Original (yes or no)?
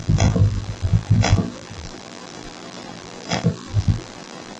no